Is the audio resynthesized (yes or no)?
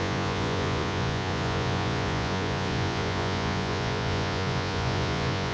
yes